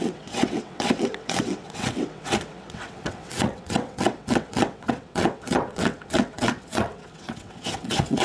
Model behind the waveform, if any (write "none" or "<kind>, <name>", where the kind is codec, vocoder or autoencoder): vocoder, WaveNeXt